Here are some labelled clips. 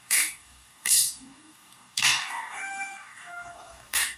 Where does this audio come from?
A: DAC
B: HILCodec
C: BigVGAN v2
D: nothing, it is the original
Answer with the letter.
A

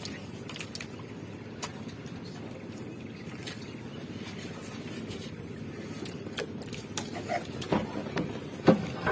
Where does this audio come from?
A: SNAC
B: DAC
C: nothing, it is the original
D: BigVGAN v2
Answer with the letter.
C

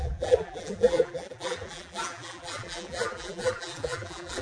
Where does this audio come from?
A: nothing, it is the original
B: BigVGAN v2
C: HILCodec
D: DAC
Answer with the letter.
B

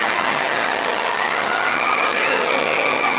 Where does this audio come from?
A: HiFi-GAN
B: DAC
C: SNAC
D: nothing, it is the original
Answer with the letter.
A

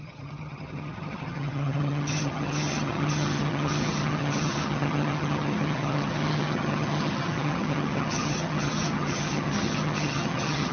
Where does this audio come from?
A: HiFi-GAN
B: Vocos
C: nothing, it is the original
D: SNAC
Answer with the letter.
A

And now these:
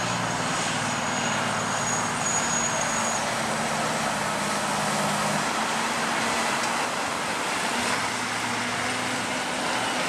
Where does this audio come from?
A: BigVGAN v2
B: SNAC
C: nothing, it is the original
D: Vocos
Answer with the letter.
C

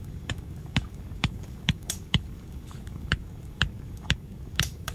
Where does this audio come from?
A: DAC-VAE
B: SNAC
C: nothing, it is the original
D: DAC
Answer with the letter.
D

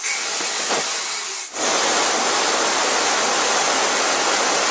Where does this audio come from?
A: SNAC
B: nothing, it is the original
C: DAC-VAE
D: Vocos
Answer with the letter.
B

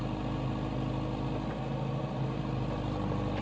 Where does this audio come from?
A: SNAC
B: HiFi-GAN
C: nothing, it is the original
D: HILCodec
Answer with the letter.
C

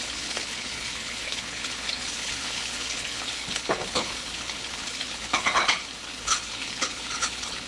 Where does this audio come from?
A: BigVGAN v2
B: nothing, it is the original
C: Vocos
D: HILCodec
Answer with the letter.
D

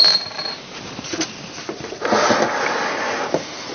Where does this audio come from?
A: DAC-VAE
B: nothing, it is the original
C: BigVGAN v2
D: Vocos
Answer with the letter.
B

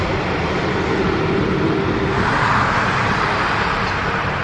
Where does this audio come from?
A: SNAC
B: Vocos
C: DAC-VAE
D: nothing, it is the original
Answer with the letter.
D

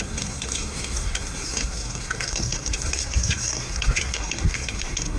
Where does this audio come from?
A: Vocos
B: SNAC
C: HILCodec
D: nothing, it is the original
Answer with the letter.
B